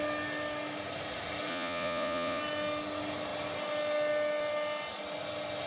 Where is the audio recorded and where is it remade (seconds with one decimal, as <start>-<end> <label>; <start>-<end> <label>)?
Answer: 0.0-1.5 recorded; 1.5-2.4 remade; 2.4-5.7 recorded